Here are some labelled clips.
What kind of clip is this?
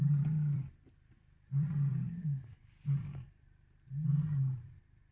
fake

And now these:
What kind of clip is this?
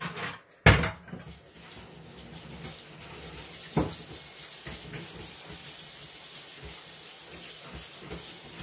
real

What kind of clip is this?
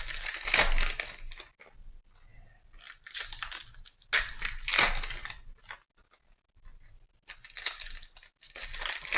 real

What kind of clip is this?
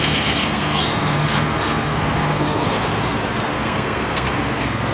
fake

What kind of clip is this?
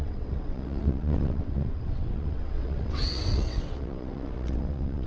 fake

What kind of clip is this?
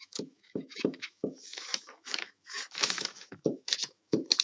fake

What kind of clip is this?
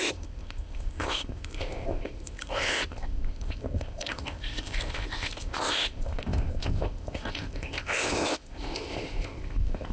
fake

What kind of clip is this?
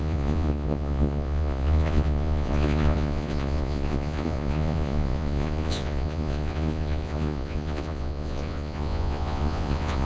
fake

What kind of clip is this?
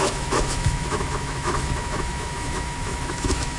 fake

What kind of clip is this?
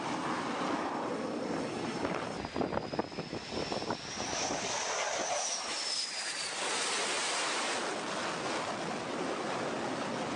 real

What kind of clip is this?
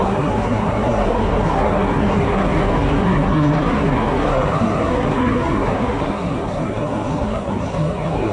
fake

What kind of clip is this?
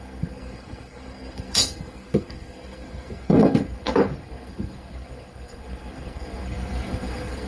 fake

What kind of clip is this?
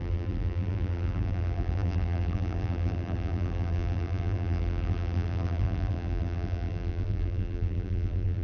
fake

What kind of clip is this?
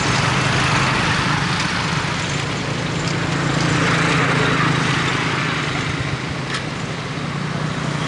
real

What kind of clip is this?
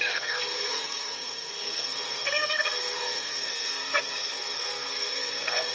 fake